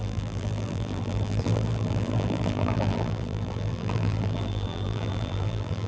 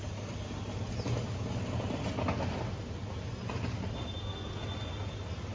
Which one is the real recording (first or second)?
second